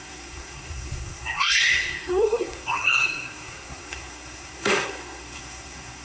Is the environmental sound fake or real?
fake